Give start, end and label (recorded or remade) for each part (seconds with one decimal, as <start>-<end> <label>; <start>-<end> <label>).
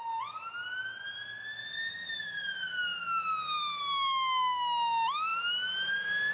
0.0-6.3 recorded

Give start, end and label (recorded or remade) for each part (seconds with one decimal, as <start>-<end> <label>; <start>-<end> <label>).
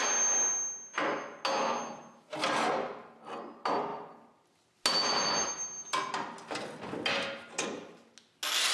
0.0-8.7 recorded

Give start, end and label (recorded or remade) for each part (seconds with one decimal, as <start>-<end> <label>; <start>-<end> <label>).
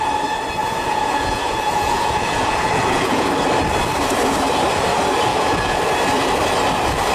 0.0-0.6 recorded; 0.6-3.3 remade; 3.3-5.3 recorded; 5.3-5.8 remade; 5.8-7.1 recorded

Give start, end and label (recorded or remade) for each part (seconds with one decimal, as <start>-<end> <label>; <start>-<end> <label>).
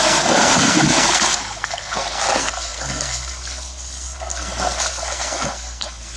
0.0-6.2 remade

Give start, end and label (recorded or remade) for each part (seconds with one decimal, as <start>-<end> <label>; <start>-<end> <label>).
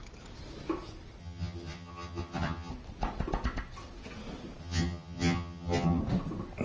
0.0-1.2 recorded; 1.2-2.7 remade; 2.7-4.6 recorded; 4.6-6.0 remade; 6.0-6.6 recorded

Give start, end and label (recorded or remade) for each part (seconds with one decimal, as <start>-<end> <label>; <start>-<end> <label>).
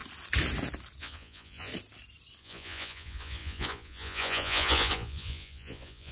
0.0-1.0 recorded; 1.0-1.7 remade; 1.7-2.4 recorded; 2.4-6.1 remade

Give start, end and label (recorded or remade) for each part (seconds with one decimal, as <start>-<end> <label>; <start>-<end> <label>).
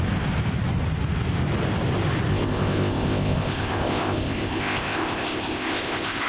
0.0-2.3 recorded; 2.3-6.3 remade